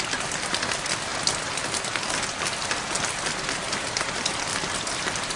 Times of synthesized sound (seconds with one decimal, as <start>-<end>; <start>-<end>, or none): 4.5-5.4